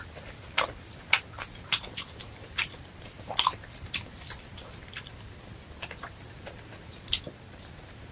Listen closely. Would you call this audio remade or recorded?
recorded